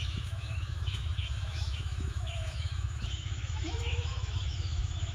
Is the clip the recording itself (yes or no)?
no